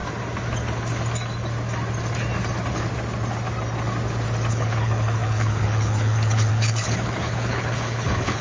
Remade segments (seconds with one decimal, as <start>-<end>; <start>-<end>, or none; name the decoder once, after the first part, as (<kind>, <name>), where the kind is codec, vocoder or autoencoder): 4.5-8.4 (codec, HILCodec)